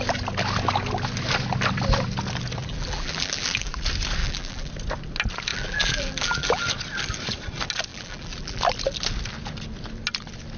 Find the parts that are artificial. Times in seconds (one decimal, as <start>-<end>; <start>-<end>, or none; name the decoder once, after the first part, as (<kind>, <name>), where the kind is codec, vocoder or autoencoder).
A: 2.6-3.7 (vocoder, BigVGAN v2); 4.2-4.7; 5.5-6.6; 7.9-8.6